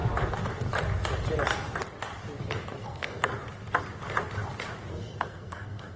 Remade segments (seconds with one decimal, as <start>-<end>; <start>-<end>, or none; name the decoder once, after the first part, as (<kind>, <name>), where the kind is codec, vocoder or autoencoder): 2.8-3.3 (codec, SNAC); 4.9-6.0